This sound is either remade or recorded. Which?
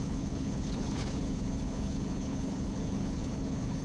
remade